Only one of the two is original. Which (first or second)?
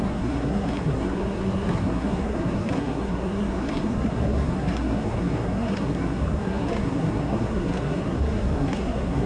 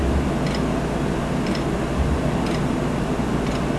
second